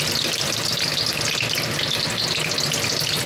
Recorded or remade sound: recorded